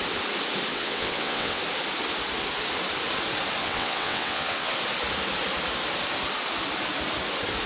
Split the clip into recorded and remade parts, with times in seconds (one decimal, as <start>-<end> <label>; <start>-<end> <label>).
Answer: 0.0-0.7 recorded; 0.7-1.6 remade; 1.6-3.6 recorded; 3.6-4.7 remade; 4.7-7.7 recorded